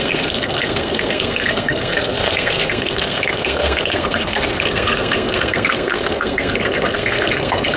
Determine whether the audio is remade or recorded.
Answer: remade